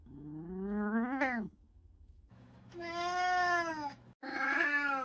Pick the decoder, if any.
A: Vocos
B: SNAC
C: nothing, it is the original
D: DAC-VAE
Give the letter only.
D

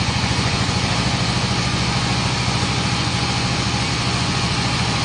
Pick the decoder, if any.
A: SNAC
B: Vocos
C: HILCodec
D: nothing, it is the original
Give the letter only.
B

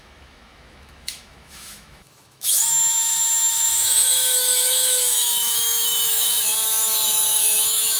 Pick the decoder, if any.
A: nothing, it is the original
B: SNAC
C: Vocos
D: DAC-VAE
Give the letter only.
D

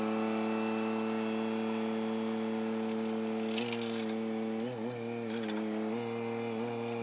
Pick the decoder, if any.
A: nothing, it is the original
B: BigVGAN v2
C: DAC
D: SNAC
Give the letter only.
A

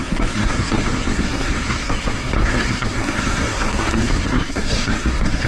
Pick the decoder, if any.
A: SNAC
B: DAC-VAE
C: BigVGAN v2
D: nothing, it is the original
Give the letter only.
A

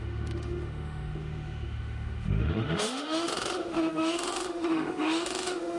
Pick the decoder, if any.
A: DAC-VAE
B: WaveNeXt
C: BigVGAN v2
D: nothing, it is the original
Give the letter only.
A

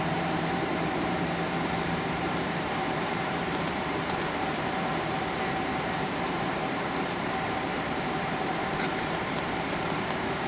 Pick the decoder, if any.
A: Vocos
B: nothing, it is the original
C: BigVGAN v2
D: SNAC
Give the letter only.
C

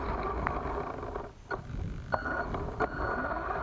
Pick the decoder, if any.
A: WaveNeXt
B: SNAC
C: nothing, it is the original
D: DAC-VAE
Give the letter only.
C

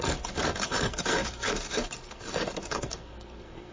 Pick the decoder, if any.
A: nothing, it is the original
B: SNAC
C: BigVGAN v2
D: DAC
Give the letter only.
B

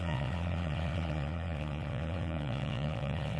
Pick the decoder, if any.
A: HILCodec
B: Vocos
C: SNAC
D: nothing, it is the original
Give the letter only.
B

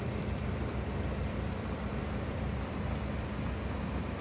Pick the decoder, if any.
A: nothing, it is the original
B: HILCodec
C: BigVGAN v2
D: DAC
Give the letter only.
C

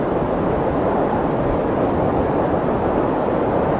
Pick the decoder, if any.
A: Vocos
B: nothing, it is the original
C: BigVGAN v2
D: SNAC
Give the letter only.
B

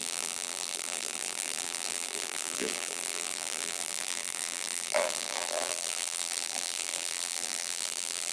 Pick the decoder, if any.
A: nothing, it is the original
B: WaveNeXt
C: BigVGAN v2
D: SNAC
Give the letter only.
C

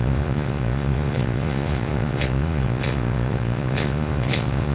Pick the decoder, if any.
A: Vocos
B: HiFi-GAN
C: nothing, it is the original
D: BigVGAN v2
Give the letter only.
A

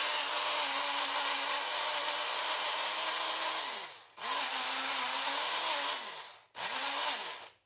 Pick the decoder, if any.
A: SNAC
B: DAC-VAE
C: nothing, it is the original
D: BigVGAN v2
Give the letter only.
C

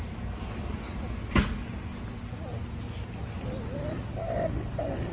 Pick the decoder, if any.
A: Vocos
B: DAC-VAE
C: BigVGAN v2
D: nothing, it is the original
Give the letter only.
D